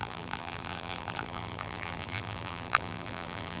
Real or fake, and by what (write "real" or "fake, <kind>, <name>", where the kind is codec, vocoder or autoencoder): fake, vocoder, BigVGAN v2